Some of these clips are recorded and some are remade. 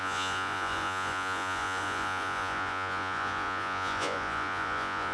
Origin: remade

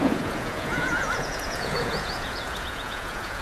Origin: remade